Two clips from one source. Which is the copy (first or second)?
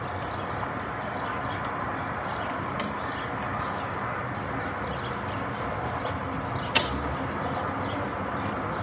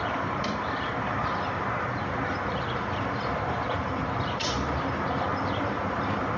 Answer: second